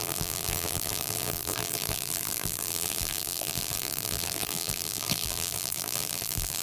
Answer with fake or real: fake